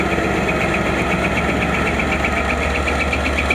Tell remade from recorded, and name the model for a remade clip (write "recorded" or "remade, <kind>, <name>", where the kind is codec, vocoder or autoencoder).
recorded